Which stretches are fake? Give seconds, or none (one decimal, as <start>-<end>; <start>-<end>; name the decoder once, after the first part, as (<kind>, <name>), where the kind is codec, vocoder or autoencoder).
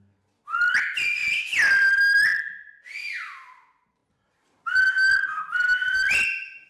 1.2-1.9 (vocoder, BigVGAN v2); 2.3-3.0